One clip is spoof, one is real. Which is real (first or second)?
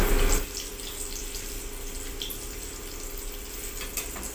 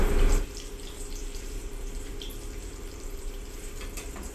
first